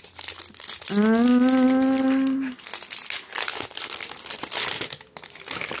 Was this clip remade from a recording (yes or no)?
no